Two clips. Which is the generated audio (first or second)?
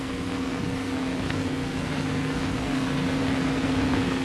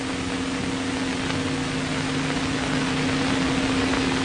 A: first